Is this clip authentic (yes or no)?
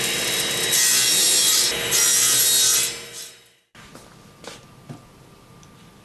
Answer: yes